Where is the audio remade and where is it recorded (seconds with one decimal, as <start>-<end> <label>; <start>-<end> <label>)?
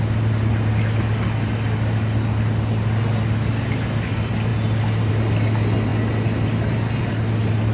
0.0-7.7 recorded